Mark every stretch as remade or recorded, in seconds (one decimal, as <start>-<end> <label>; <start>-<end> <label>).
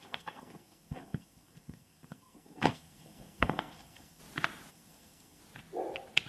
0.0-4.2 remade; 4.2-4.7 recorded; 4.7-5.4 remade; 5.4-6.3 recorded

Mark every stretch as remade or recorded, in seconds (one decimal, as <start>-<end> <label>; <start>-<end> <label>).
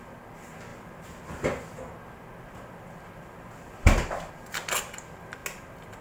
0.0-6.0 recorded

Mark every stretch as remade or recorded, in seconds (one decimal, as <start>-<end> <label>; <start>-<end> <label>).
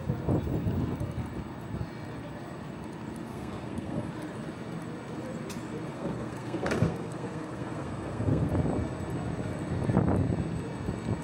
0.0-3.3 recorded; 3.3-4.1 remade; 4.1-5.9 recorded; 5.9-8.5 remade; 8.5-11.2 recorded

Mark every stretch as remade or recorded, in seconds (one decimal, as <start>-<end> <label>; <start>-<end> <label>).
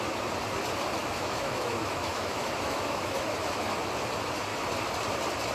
0.0-1.0 recorded; 1.0-3.7 remade; 3.7-5.5 recorded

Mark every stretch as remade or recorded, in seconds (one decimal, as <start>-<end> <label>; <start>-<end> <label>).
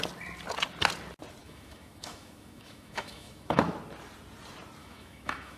0.0-1.4 recorded; 1.4-3.6 remade; 3.6-4.8 recorded; 4.8-5.6 remade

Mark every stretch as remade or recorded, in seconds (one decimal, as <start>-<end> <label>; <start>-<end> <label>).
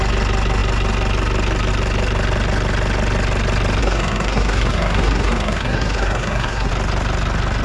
0.0-3.8 recorded; 3.8-6.7 remade; 6.7-7.6 recorded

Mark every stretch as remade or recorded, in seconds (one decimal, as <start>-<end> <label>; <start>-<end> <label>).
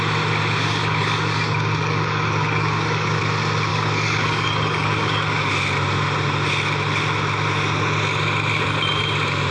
0.0-0.8 recorded; 0.8-3.2 remade; 3.2-3.7 recorded; 3.7-5.5 remade; 5.5-9.5 recorded